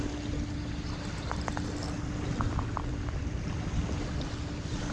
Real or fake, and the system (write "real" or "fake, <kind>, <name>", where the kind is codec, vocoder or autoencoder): real